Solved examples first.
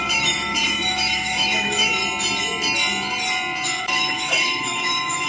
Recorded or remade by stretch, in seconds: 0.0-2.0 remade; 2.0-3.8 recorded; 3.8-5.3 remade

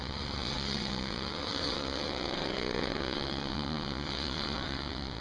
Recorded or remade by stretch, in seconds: 0.0-5.2 remade

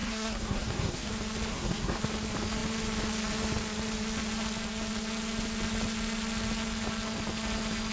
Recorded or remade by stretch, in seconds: 0.0-1.1 remade; 1.1-1.5 recorded; 1.5-2.0 remade; 2.0-7.9 recorded

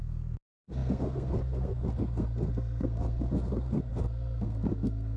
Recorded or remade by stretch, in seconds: 0.0-5.2 remade

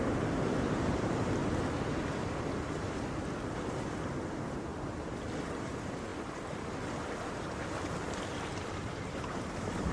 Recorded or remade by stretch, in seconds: 0.0-1.4 remade; 1.4-3.9 recorded; 3.9-4.7 remade; 4.7-5.6 recorded; 5.6-6.1 remade; 6.1-8.8 recorded; 8.8-9.9 remade

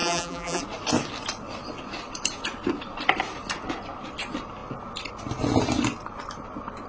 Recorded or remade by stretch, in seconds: 0.0-0.6 remade; 0.6-6.9 recorded

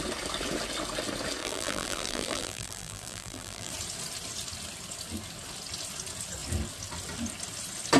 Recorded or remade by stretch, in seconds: 0.0-1.4 recorded; 1.4-3.7 remade; 3.7-8.0 recorded